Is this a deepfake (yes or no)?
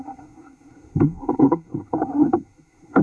yes